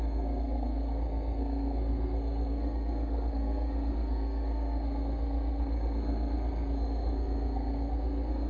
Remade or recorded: remade